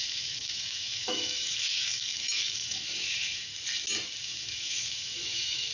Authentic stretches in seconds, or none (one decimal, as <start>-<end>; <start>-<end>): 3.5-4.2